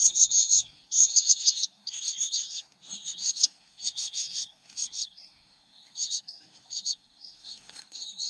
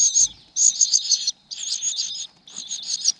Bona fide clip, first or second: second